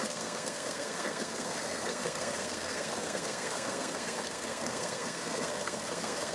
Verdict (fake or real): fake